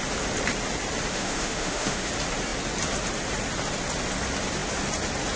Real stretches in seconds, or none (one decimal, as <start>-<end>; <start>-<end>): 0.0-1.1; 2.1-5.4